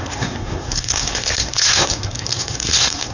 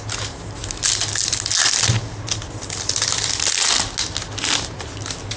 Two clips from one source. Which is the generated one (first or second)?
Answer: first